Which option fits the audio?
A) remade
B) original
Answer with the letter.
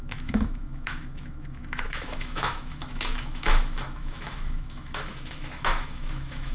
A